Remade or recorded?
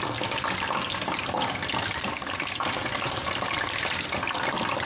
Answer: recorded